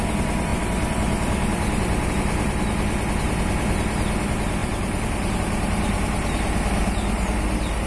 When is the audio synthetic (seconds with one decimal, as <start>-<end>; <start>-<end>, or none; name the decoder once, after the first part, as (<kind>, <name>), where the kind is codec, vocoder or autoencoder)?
0.5-2.1 (vocoder, BigVGAN v2); 4.6-5.4